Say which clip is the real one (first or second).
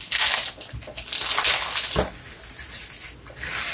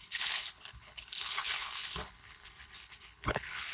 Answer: first